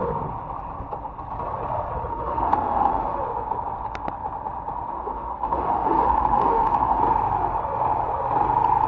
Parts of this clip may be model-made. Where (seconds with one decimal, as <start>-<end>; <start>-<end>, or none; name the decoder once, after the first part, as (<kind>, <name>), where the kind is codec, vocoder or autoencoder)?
2.1-3.2 (autoencoder, DAC-VAE); 4.9-7.0